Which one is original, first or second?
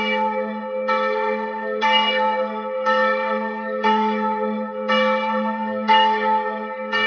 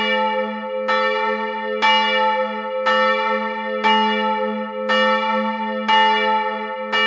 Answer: second